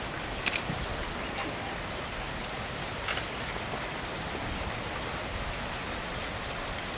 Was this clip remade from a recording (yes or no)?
no